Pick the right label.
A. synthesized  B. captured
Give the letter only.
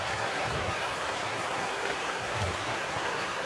A